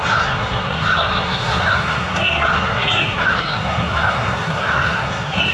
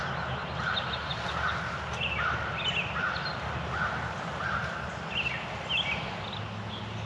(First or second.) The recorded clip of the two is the second